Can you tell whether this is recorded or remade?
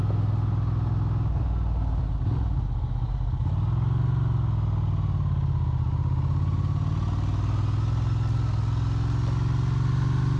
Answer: recorded